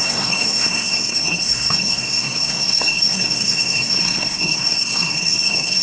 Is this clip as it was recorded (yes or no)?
no